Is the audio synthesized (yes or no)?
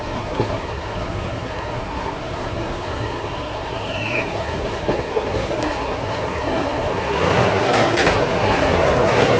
yes